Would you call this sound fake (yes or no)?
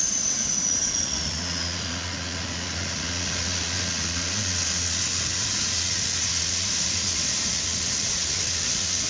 yes